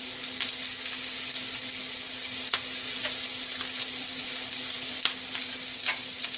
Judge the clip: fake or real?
real